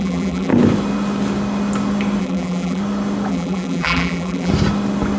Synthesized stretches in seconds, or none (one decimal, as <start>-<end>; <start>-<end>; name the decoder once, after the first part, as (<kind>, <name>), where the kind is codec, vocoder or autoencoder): 0.0-0.5 (vocoder, BigVGAN v2); 2.2-2.8; 3.3-4.5

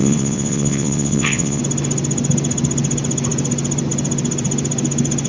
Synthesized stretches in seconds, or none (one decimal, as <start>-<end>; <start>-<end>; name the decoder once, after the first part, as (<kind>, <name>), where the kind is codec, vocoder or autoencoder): 0.0-1.6 (vocoder, WaveNeXt)

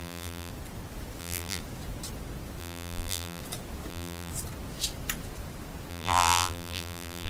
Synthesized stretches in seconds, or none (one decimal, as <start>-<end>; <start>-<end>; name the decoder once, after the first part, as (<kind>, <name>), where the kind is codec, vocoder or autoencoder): 0.0-0.5 (vocoder, BigVGAN v2); 1.2-1.6; 2.6-3.4; 3.9-4.3; 5.9-7.3

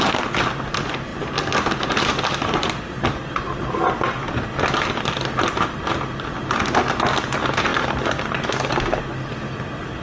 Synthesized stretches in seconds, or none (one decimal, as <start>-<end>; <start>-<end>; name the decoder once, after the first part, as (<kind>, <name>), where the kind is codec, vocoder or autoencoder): none

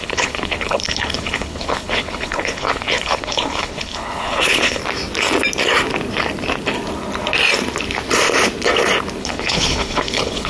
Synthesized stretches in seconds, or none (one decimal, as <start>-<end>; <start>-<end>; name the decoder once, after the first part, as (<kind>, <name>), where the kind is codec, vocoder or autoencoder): 0.0-4.8 (codec, HILCodec); 9.2-10.5

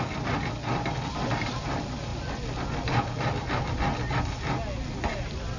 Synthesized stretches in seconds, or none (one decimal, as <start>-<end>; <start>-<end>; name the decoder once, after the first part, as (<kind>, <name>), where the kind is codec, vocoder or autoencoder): none

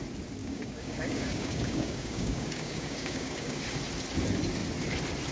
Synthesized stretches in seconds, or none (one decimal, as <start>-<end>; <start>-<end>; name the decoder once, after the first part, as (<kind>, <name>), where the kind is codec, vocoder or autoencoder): 0.4-3.6 (codec, DAC)

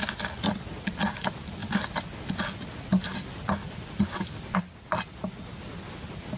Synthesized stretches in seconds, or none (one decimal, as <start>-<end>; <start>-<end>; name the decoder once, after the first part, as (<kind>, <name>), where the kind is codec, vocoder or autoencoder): none